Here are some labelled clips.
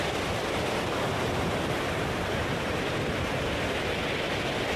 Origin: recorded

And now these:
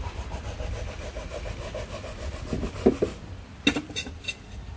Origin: recorded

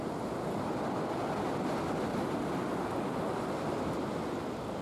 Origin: recorded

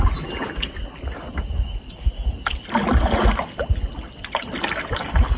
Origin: recorded